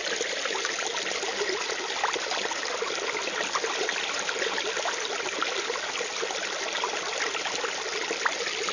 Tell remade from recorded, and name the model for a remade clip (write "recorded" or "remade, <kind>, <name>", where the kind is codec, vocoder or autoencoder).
recorded